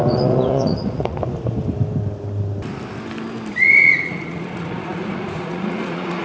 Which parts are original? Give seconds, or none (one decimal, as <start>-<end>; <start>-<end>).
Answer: 1.2-3.5